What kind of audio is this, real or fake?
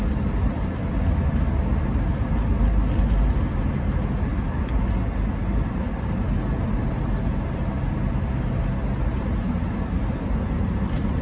real